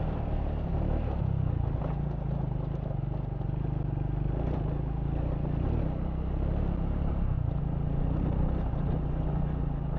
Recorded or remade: recorded